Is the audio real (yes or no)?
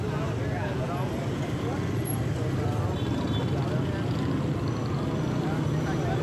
yes